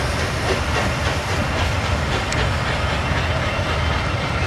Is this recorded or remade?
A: recorded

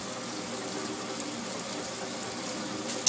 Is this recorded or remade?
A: recorded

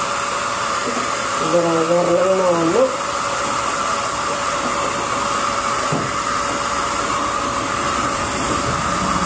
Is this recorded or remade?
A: remade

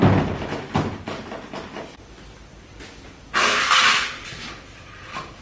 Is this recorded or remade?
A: remade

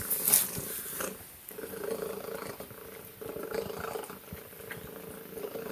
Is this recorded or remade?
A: recorded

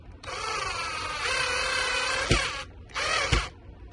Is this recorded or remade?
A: recorded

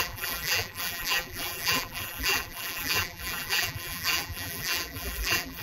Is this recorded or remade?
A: remade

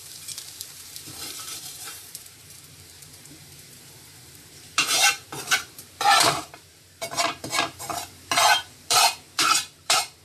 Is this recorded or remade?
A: remade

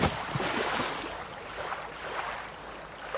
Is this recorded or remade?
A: recorded